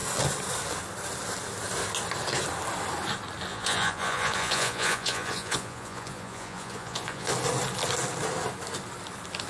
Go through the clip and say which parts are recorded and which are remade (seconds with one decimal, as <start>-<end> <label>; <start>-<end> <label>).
0.0-3.5 recorded; 3.5-7.3 remade; 7.3-9.5 recorded